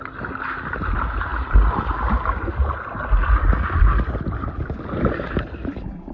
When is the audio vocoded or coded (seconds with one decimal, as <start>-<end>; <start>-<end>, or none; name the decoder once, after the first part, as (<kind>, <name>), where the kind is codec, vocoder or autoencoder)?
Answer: none